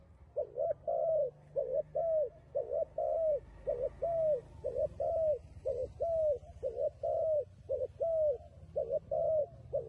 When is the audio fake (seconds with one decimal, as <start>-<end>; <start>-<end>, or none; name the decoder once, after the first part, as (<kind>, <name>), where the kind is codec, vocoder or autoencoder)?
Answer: none